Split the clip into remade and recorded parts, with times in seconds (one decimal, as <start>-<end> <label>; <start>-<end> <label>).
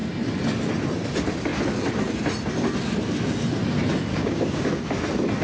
0.0-4.1 recorded; 4.1-4.7 remade; 4.7-5.4 recorded